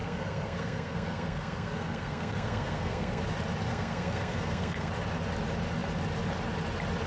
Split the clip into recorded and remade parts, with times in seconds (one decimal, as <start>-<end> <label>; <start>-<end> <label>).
0.0-3.2 remade; 3.2-3.7 recorded; 3.7-4.9 remade; 4.9-7.1 recorded